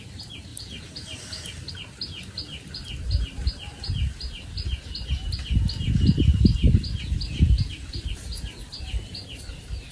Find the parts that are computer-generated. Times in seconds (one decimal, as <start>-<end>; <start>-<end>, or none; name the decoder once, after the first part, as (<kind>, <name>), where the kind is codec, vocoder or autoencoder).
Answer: none